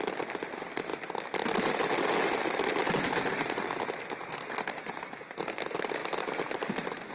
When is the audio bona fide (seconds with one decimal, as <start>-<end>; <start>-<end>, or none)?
0.0-0.9; 3.8-6.0